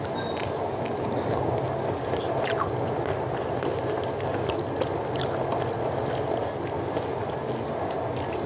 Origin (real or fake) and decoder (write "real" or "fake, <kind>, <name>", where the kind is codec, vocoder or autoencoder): real